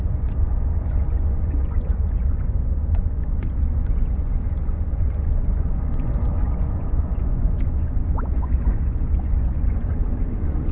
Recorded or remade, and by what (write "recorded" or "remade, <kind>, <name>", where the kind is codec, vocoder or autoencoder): remade, vocoder, Vocos